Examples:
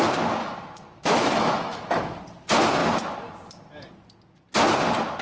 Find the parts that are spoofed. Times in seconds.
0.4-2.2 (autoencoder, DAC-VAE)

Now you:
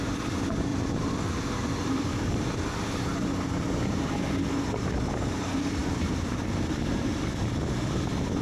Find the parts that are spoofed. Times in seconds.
0.7-2.2 (vocoder, BigVGAN v2); 5.8-6.4

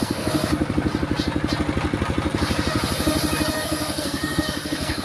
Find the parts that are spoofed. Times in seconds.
0.0-0.5 (codec, SNAC); 3.5-5.0

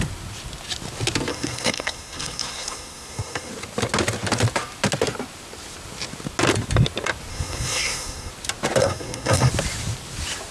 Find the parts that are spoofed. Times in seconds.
1.3-3.5 (codec, SNAC); 7.3-8.3; 8.8-9.5

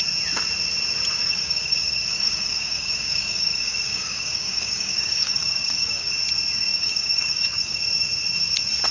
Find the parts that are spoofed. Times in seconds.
1.2-6.1 (codec, DAC); 6.7-7.8

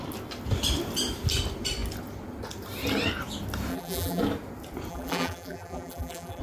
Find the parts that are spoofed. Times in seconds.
3.7-4.2 (vocoder, BigVGAN v2); 4.9-6.4